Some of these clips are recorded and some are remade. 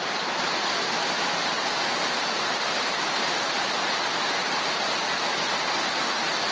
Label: recorded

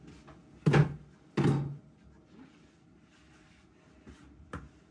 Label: recorded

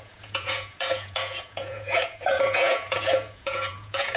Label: remade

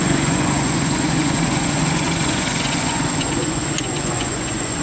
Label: remade